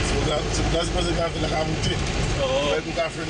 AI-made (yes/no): no